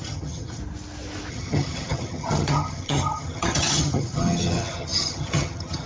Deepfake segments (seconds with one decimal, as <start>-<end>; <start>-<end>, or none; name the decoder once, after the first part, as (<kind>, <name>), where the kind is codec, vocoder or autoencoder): 0.0-0.6 (vocoder, HiFi-GAN); 1.3-5.9